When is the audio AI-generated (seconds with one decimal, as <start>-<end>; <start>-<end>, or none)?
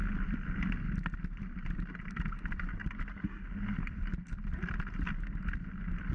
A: none